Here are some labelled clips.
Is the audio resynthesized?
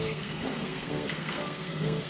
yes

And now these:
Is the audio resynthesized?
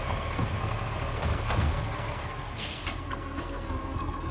yes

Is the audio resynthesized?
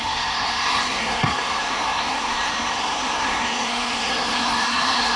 yes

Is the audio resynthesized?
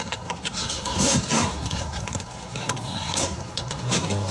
yes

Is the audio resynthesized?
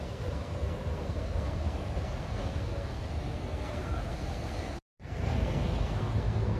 yes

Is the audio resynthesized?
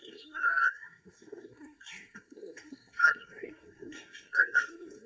yes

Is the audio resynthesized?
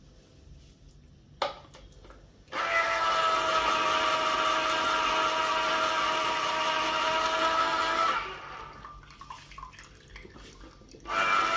no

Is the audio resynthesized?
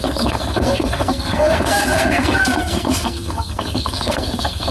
yes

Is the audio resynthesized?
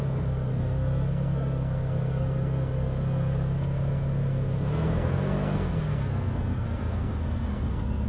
yes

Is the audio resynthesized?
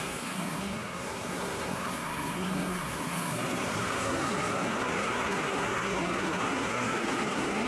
yes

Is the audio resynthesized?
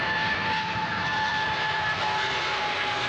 yes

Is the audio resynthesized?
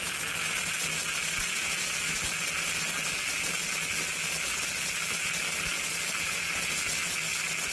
no